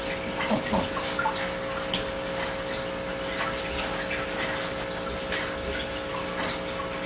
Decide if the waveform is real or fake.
real